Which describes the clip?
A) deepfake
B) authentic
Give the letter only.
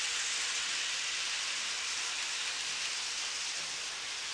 B